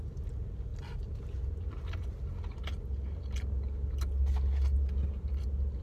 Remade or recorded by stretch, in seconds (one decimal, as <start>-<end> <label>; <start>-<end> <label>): 0.0-5.8 recorded